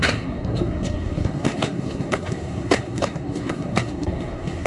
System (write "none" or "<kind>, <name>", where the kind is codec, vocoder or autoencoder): codec, SNAC